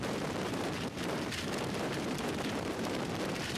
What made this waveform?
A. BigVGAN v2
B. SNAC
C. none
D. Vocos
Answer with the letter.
A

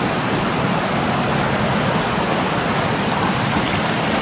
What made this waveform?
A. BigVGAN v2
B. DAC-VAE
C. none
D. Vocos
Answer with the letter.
C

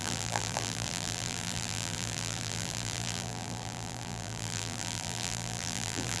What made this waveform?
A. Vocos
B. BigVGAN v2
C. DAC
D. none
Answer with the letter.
B